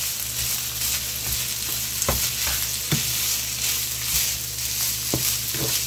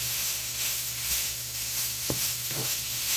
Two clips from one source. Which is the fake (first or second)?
second